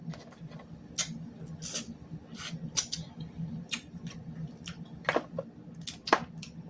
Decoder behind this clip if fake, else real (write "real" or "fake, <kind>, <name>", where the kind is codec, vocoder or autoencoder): real